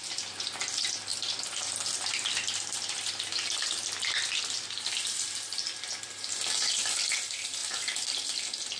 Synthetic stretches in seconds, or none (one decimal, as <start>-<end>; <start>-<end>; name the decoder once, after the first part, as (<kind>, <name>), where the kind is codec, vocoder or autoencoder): none